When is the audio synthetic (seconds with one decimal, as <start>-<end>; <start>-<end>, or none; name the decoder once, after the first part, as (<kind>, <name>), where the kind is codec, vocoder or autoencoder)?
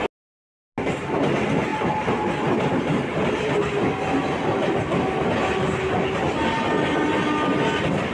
none